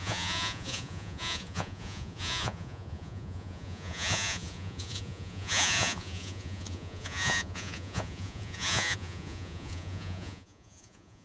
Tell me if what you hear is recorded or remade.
remade